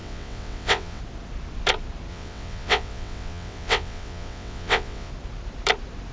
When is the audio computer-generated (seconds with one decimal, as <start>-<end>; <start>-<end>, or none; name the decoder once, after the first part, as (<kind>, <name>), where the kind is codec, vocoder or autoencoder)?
0.0-1.0 (vocoder, WaveNeXt); 2.1-5.1